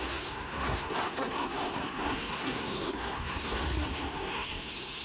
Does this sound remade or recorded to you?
remade